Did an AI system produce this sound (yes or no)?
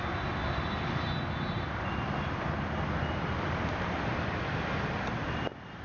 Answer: no